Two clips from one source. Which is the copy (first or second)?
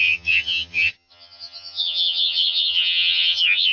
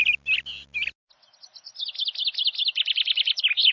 first